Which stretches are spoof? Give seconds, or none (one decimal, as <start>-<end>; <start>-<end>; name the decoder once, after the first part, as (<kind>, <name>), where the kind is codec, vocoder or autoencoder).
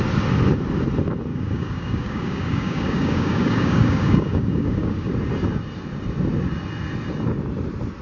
1.3-5.1 (codec, DAC)